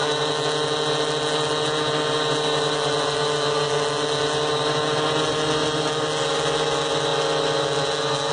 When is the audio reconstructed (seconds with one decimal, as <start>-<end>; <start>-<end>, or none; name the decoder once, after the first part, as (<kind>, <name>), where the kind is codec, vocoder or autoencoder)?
none